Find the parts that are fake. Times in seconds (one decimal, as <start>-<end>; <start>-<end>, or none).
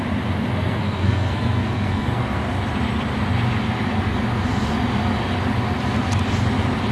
0.5-2.4